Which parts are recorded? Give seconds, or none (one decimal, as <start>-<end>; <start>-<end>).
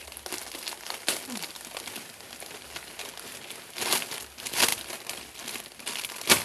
0.0-4.7; 6.0-6.4